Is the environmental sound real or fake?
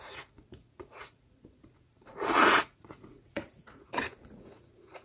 fake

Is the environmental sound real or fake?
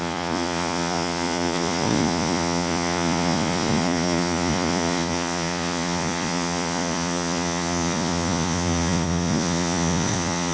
fake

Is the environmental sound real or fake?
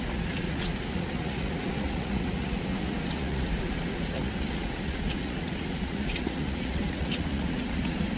fake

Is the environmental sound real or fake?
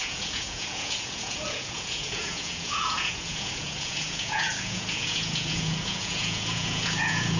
fake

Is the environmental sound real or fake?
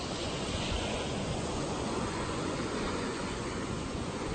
fake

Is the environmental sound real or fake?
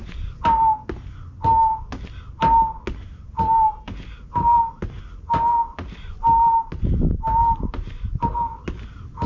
real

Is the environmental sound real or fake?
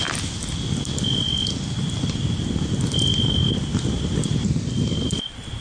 real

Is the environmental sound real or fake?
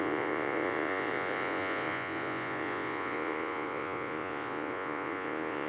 fake